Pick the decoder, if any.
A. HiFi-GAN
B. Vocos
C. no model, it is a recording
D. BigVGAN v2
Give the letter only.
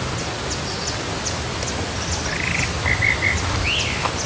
C